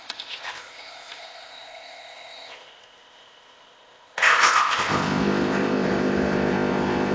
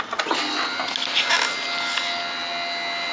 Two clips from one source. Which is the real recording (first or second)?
second